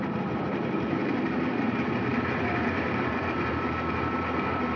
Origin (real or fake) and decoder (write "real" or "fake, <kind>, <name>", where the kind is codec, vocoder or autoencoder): fake, vocoder, BigVGAN v2